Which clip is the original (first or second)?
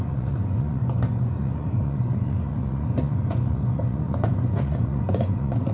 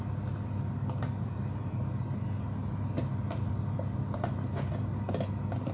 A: second